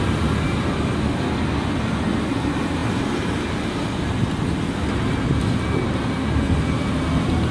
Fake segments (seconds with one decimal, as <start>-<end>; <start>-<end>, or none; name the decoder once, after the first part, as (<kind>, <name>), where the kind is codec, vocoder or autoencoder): none